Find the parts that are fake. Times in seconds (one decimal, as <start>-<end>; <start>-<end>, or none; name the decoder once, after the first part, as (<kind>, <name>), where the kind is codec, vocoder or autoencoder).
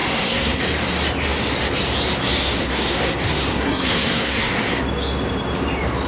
0.0-0.6 (codec, SNAC); 2.6-4.5